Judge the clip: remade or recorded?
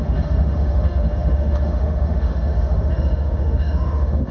remade